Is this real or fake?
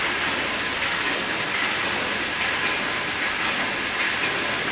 real